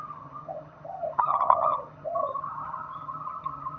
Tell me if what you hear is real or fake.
fake